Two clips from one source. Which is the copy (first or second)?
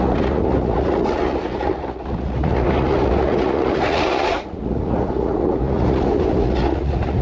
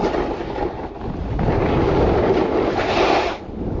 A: first